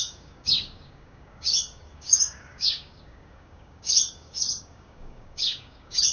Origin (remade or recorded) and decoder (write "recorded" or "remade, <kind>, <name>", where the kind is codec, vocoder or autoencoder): remade, codec, DAC